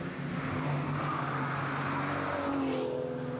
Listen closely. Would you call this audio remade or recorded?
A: recorded